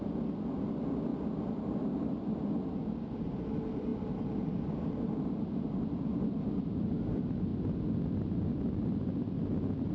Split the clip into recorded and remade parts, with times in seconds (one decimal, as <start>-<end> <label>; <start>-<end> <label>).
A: 0.0-1.1 recorded; 1.1-2.3 remade; 2.3-9.9 recorded